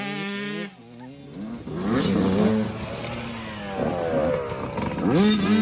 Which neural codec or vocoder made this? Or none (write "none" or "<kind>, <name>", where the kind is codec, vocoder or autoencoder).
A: none